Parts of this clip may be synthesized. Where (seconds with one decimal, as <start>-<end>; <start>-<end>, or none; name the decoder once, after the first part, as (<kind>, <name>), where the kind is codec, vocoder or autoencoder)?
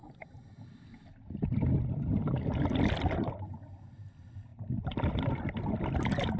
none